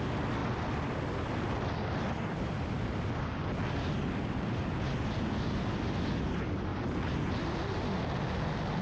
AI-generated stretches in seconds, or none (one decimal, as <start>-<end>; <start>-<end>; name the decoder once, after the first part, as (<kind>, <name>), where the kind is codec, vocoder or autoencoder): none